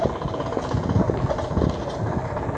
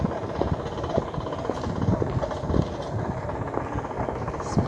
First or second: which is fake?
second